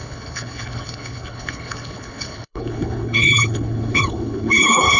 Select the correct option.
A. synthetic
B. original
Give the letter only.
A